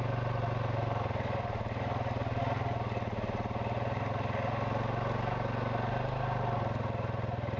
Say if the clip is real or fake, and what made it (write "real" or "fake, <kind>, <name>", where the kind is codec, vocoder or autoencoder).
real